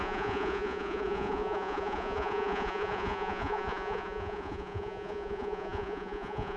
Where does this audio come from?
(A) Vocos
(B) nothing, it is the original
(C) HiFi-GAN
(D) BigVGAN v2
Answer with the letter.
A